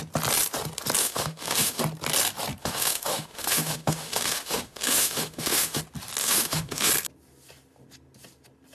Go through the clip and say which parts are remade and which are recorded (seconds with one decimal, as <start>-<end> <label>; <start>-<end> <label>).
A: 0.0-1.0 recorded; 1.0-1.8 remade; 1.8-2.6 recorded; 2.6-5.8 remade; 5.8-6.2 recorded; 6.2-6.9 remade; 6.9-8.7 recorded